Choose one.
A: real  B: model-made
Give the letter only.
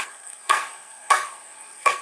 B